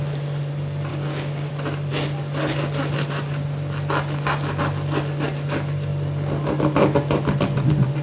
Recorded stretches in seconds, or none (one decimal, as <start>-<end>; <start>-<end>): 0.0-0.9; 1.5-8.0